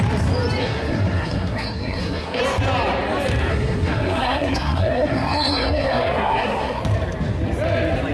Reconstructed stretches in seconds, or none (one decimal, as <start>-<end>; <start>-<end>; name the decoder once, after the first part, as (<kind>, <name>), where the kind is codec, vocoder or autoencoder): 0.6-2.4 (codec, SNAC); 3.5-6.8